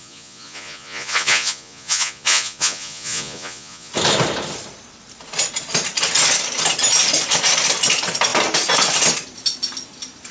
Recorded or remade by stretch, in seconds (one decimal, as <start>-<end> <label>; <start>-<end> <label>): 0.0-3.9 remade; 3.9-10.3 recorded